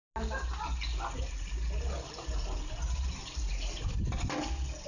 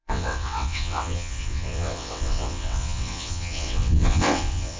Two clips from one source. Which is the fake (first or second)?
second